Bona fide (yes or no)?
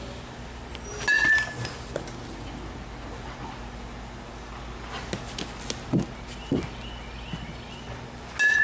yes